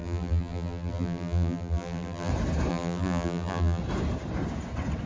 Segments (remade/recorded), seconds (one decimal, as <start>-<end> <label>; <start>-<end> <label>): 0.0-2.3 remade; 2.3-2.7 recorded; 2.7-3.8 remade; 3.8-5.1 recorded